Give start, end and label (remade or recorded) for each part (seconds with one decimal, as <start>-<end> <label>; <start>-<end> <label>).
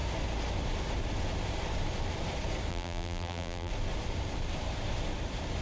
0.0-2.7 recorded; 2.7-3.7 remade; 3.7-5.6 recorded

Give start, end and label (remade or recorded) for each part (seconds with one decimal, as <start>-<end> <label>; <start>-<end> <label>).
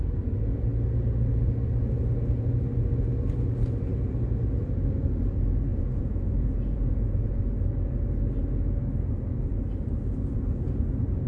0.0-5.7 recorded; 5.7-7.4 remade; 7.4-11.3 recorded